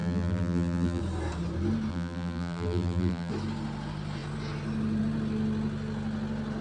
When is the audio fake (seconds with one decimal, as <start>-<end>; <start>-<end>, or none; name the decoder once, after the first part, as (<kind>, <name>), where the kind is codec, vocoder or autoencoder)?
0.0-1.0 (vocoder, BigVGAN v2); 1.9-3.3